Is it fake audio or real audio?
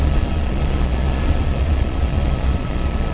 fake